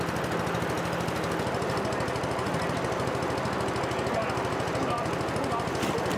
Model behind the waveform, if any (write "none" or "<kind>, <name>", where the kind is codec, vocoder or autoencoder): none